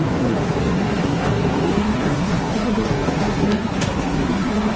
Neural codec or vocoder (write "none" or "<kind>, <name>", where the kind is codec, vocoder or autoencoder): codec, SNAC